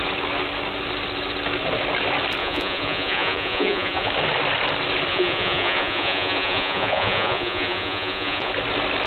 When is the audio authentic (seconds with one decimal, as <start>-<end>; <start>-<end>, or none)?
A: 0.0-2.4; 4.1-5.1; 8.5-9.1